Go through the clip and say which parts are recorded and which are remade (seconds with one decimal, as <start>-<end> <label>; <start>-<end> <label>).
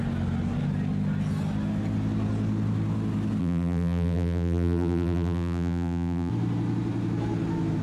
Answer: 0.0-3.4 recorded; 3.4-6.3 remade; 6.3-7.8 recorded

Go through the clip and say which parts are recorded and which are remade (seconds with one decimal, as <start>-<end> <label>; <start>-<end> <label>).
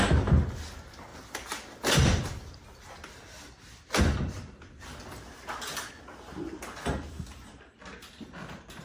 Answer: 0.0-1.1 recorded; 1.1-5.9 remade; 5.9-8.8 recorded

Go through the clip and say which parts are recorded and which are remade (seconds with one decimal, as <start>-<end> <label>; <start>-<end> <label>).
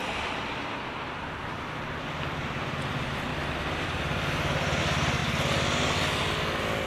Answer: 0.0-3.3 remade; 3.3-4.8 recorded; 4.8-5.2 remade; 5.2-6.2 recorded; 6.2-6.9 remade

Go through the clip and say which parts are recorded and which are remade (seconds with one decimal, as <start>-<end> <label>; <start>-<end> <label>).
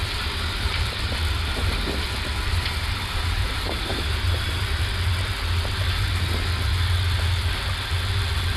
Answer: 0.0-1.1 remade; 1.1-2.5 recorded; 2.5-4.8 remade; 4.8-8.6 recorded